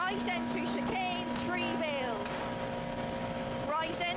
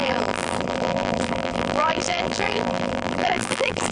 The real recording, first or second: first